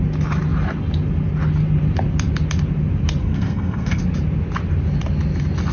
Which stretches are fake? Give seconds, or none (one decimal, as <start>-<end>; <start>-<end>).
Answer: 3.2-4.0